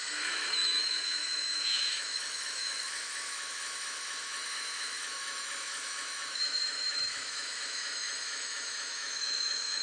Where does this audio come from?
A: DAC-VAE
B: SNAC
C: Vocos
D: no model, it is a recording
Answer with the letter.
A